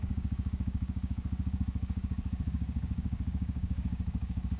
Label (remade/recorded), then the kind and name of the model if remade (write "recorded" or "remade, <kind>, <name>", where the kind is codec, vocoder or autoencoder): remade, codec, DAC